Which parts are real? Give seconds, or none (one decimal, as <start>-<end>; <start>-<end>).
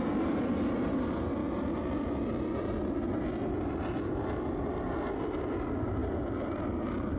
0.0-7.2